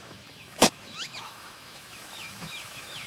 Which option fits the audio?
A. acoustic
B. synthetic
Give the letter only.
B